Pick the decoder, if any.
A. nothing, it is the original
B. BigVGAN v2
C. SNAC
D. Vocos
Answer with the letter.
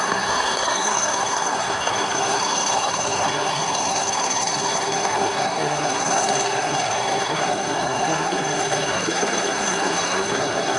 C